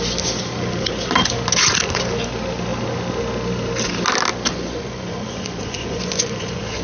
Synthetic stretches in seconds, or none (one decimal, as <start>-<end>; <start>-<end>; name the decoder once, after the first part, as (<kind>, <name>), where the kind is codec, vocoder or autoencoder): 4.5-6.8 (vocoder, Vocos)